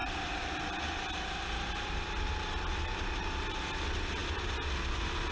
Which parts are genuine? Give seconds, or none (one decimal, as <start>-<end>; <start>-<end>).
0.0-5.3